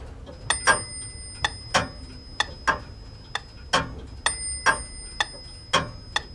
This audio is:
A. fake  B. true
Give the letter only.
B